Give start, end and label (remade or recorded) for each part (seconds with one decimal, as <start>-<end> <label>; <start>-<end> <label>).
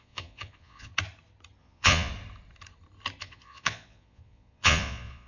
0.0-0.9 remade; 0.9-1.6 recorded; 1.6-2.1 remade; 2.1-3.2 recorded; 3.2-5.3 remade